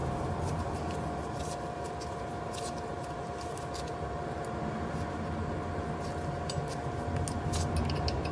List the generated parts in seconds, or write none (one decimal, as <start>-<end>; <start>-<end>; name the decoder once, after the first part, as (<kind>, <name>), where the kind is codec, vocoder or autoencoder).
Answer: 0.0-0.8 (vocoder, BigVGAN v2)